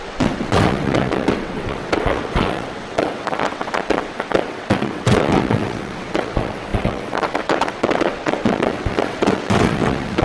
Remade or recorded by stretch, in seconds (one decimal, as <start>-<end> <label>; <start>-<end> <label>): 0.0-10.2 remade